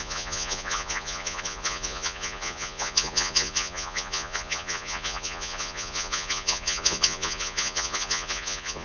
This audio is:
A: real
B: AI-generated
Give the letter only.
B